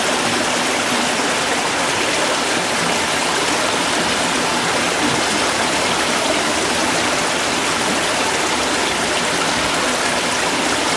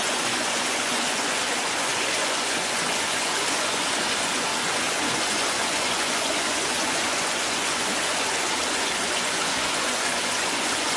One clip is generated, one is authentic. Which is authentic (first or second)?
first